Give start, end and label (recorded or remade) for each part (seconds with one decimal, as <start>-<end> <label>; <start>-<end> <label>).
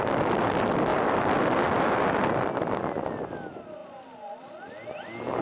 0.0-5.4 recorded